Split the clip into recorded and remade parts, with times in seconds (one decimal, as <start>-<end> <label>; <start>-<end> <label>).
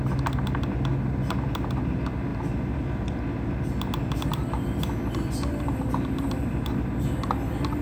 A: 0.0-7.8 recorded